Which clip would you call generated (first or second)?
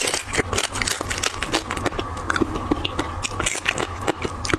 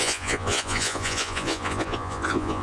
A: second